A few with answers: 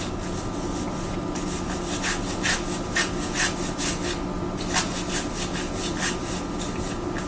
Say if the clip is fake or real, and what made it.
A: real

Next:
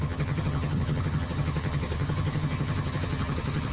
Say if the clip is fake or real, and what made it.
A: fake, vocoder, HiFi-GAN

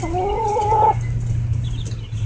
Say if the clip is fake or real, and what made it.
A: real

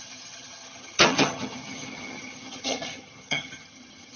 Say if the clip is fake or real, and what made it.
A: fake, vocoder, HiFi-GAN